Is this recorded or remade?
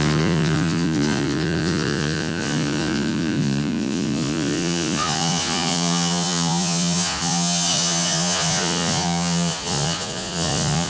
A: remade